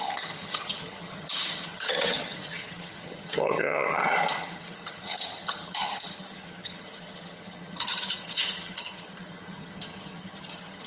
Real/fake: fake